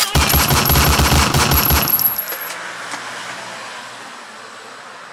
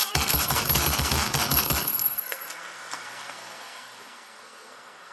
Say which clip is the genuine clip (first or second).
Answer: first